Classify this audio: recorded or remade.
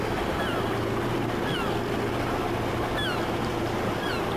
recorded